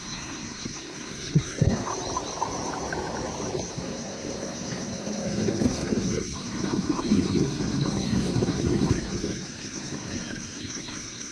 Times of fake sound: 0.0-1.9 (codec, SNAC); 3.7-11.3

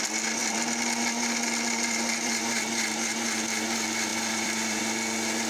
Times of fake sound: 0.4-2.3 (vocoder, BigVGAN v2); 4.1-4.8

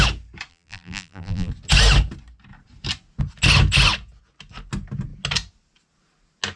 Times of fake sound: 0.5-1.5 (vocoder, BigVGAN v2)